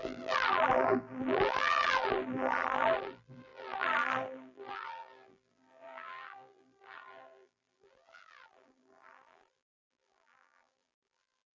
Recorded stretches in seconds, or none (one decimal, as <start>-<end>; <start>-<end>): none